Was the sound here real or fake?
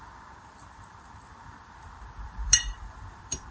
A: fake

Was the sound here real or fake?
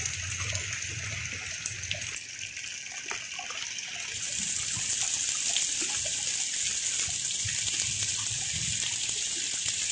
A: real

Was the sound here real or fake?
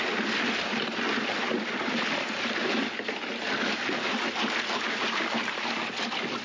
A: real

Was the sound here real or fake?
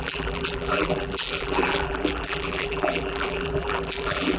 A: fake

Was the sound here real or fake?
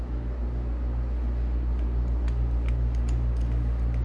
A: real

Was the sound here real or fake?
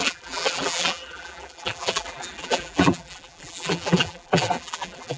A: fake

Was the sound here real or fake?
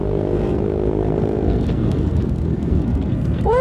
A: fake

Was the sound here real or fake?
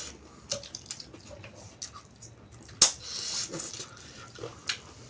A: real